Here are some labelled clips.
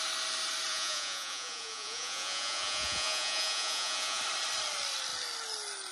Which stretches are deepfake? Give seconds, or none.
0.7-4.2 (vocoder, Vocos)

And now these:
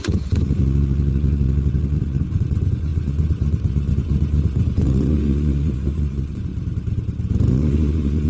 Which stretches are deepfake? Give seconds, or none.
0.0-6.5 (vocoder, Vocos); 7.5-8.3